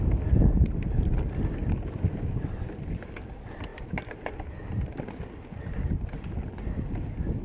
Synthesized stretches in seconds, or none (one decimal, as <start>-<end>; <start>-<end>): none